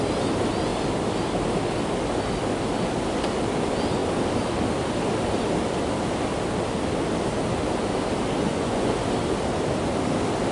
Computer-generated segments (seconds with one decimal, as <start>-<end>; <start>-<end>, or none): 8.4-8.9